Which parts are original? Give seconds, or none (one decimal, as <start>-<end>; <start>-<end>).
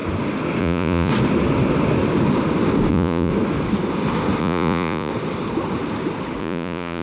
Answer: 0.0-0.6; 1.1-2.9; 3.3-4.4; 5.1-6.4